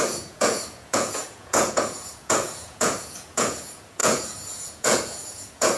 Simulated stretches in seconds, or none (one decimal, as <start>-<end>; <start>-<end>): 0.0-5.8